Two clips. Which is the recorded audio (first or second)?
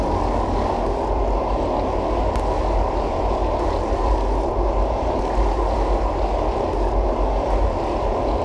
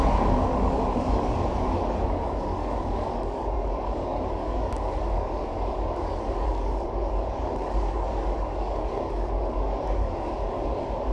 first